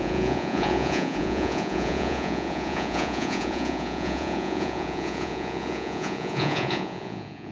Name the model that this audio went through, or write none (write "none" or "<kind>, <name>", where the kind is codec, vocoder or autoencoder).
vocoder, Vocos